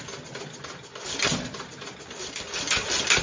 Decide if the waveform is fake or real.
real